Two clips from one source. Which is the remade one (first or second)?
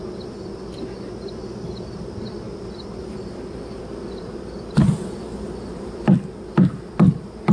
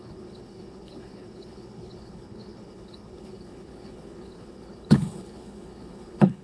second